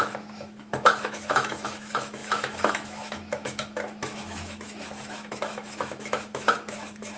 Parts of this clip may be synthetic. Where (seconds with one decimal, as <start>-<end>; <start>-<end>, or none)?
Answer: 0.0-7.2